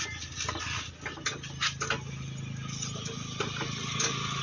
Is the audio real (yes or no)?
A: yes